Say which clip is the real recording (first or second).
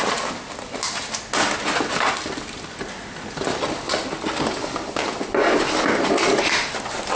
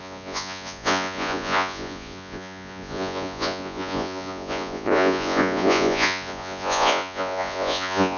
first